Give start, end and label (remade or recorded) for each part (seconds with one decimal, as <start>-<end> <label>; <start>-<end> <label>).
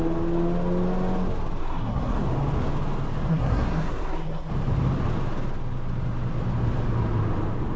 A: 0.0-1.6 recorded; 1.6-2.2 remade; 2.2-3.3 recorded; 3.3-4.5 remade; 4.5-7.8 recorded